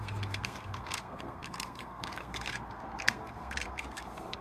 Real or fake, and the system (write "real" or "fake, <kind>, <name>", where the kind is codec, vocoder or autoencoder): fake, codec, SNAC